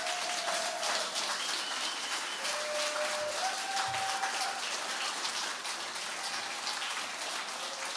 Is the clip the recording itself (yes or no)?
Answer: yes